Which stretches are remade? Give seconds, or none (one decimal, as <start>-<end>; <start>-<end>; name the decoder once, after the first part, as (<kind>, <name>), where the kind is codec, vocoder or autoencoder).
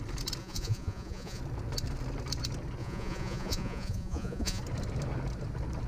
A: 0.4-1.4 (vocoder, Vocos); 2.8-4.6